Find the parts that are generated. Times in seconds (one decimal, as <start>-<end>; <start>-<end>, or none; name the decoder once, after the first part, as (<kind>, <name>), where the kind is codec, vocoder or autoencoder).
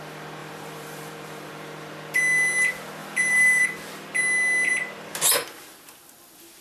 0.4-1.5 (vocoder, BigVGAN v2); 3.0-3.6